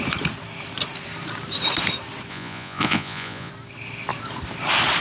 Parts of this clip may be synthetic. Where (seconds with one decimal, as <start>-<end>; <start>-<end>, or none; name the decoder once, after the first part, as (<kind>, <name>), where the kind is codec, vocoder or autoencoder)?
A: 2.3-3.5 (vocoder, Vocos)